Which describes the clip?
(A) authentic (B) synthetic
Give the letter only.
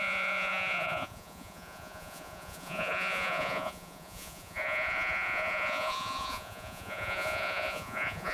B